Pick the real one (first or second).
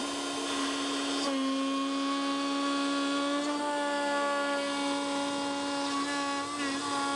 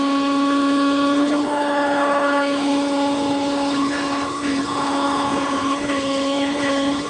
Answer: first